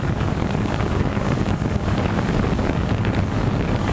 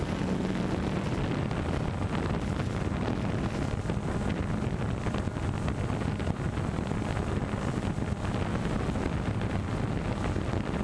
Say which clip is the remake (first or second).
first